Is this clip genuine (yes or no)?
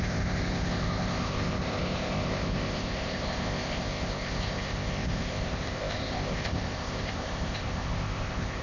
no